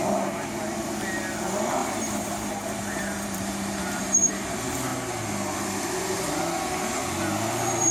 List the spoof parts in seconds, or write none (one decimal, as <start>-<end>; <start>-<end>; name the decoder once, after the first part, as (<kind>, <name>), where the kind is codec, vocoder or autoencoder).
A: 1.8-4.3 (vocoder, BigVGAN v2)